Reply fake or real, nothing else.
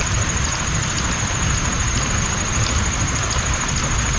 real